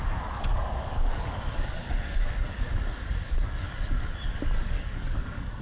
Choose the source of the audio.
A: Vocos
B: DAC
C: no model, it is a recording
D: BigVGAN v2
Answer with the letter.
B